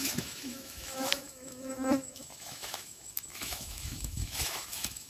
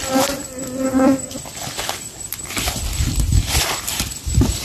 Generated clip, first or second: first